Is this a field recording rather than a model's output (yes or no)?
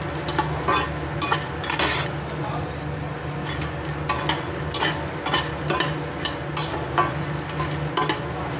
yes